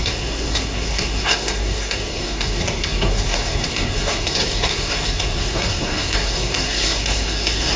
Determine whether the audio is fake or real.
fake